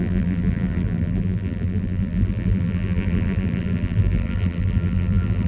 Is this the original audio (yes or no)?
no